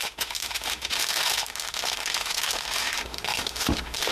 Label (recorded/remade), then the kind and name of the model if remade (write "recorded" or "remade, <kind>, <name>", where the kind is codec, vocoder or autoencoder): remade, autoencoder, DAC-VAE